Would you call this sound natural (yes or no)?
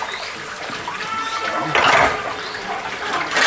yes